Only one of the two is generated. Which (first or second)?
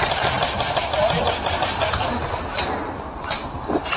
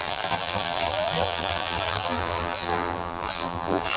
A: second